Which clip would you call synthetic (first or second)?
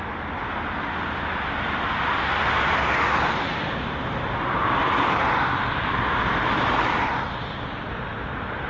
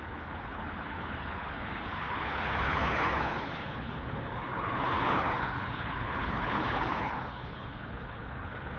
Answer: second